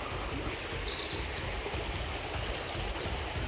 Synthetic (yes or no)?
no